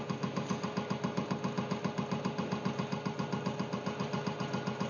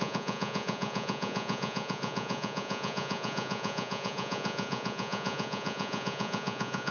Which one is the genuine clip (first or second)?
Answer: first